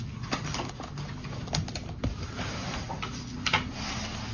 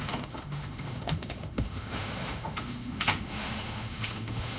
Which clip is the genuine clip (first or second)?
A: first